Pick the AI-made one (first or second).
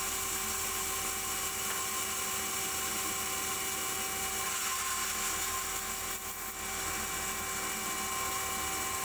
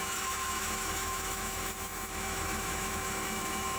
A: second